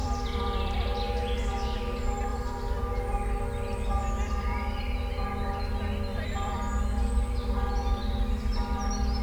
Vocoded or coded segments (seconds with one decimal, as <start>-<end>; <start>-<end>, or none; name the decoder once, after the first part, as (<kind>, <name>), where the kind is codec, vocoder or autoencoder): 0.0-0.9 (vocoder, BigVGAN v2); 2.3-2.8; 4.0-4.8; 6.1-6.6